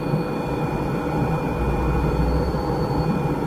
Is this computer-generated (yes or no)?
yes